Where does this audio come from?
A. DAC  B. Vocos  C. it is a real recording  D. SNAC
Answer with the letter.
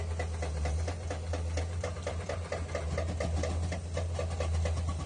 C